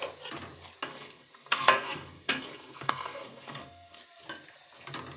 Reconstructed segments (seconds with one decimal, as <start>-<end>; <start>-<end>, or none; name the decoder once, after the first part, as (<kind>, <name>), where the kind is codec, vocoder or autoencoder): 0.9-4.0 (codec, SNAC)